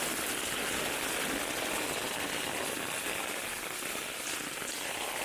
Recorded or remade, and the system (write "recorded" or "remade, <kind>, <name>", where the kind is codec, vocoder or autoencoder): recorded